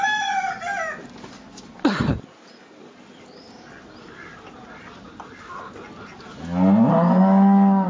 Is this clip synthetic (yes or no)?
no